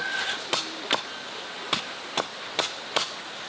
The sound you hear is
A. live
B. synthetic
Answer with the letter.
A